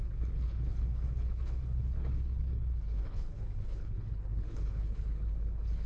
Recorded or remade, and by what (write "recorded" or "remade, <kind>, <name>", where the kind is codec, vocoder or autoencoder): remade, codec, HILCodec